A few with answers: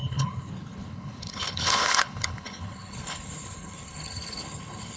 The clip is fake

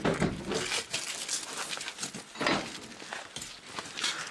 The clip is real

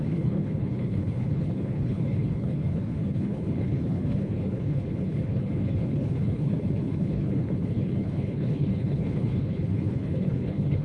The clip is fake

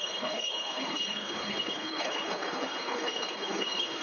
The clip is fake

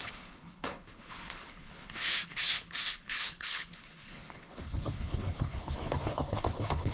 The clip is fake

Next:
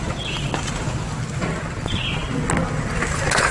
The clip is real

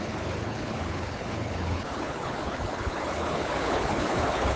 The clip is fake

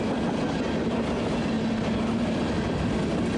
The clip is real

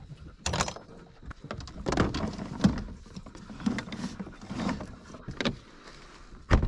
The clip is real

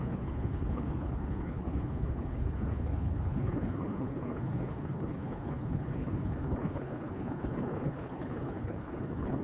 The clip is fake